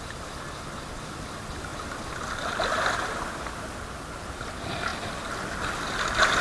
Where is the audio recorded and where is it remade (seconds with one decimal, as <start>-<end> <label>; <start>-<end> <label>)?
0.0-6.4 recorded